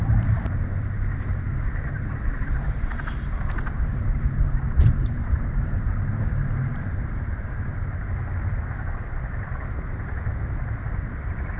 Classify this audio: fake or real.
fake